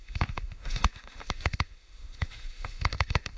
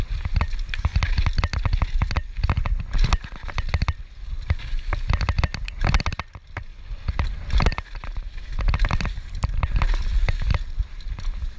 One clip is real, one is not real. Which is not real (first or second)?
first